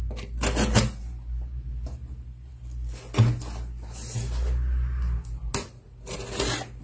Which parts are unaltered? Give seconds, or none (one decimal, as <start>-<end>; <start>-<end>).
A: 0.0-6.8